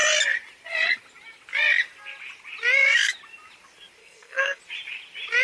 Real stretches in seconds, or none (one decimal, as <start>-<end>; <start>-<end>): 0.0-4.0; 4.6-5.4